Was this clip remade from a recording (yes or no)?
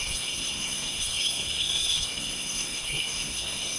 yes